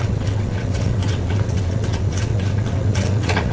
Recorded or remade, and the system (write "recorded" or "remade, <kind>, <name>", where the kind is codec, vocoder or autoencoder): remade, vocoder, WaveNeXt